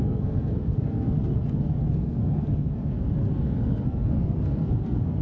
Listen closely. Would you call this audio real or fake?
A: fake